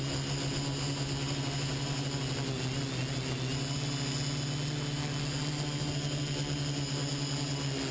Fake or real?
real